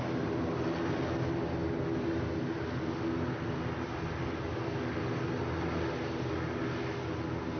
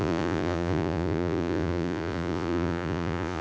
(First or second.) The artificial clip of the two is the second